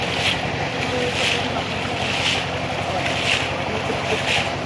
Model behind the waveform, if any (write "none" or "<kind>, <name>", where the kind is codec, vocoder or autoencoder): none